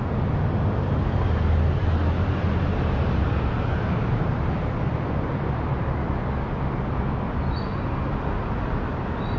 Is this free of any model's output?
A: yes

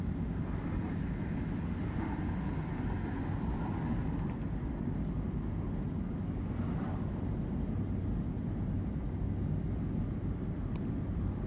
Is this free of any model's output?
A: yes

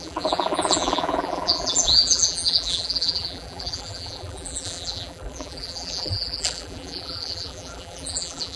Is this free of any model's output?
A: no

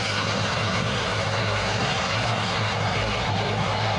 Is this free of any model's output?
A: no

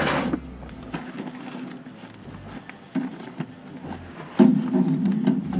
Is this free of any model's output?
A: yes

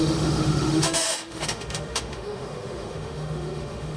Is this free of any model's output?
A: no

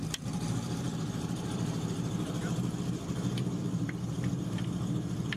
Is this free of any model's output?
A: no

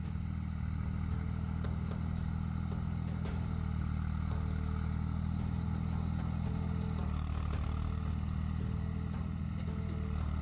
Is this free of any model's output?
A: yes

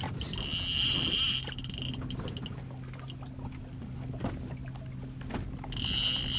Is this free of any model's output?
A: yes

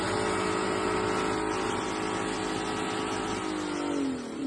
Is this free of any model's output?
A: yes